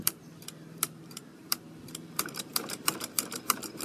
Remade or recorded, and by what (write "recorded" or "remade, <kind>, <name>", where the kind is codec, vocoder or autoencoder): remade, vocoder, BigVGAN v2